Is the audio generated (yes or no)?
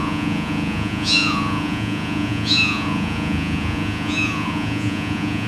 yes